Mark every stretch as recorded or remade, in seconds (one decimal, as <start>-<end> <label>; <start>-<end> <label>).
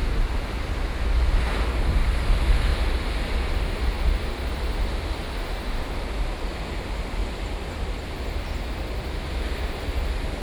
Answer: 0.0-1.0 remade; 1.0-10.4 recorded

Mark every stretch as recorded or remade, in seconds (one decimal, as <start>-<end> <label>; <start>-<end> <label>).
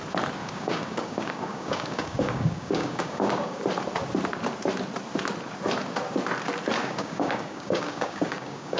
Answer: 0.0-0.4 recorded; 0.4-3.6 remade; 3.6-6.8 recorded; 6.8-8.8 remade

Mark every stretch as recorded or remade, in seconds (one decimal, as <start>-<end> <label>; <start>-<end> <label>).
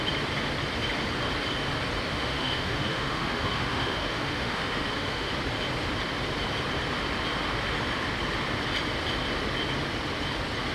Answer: 0.0-2.1 recorded; 2.1-5.3 remade; 5.3-10.7 recorded